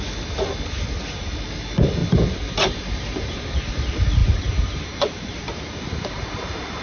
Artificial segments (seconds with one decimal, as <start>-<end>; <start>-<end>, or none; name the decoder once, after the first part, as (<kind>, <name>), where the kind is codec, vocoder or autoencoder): 2.0-3.4 (vocoder, BigVGAN v2); 4.2-6.8